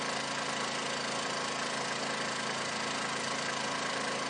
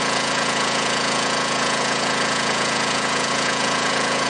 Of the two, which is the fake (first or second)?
second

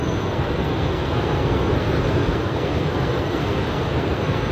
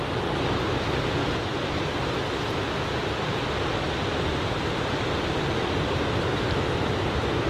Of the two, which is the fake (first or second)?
first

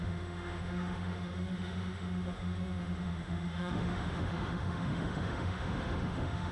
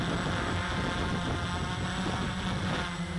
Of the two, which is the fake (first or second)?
first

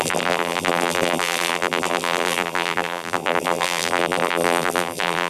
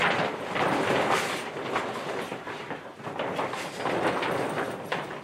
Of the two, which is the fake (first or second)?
first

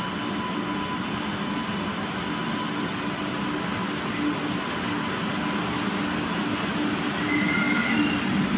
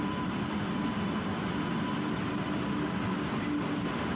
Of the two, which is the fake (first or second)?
second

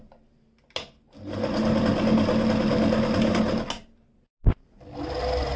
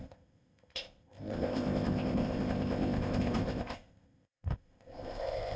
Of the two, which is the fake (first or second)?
second